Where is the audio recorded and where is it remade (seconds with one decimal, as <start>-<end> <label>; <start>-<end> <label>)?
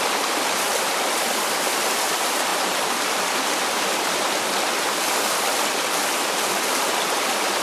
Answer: 0.0-2.5 recorded; 2.5-3.2 remade; 3.2-7.6 recorded